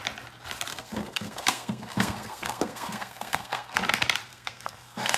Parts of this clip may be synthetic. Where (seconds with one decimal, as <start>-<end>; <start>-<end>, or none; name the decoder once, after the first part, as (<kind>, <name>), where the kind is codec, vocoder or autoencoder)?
0.7-3.8 (codec, SNAC); 4.3-5.2